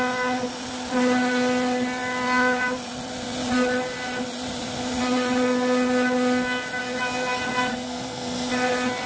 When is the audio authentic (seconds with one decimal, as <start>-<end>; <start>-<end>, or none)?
0.0-7.7; 8.5-9.1